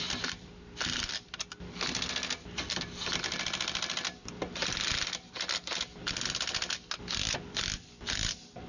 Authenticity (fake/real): real